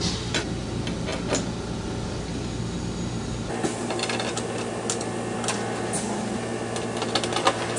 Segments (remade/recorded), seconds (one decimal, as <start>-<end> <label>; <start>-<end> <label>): 0.0-7.8 recorded